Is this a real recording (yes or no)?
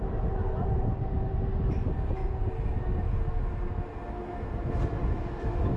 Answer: yes